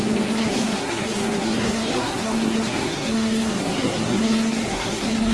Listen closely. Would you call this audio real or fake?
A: fake